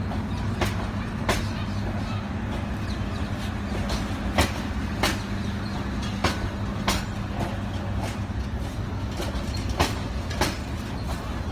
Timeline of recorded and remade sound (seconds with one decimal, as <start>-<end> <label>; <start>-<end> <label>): 0.0-11.5 recorded